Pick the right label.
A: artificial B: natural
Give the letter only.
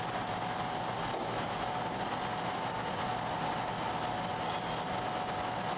B